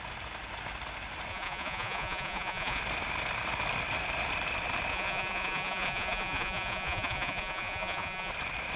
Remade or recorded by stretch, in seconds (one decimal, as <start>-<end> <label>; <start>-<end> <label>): 0.0-1.3 recorded; 1.3-2.8 remade; 2.8-4.9 recorded; 4.9-8.3 remade; 8.3-8.8 recorded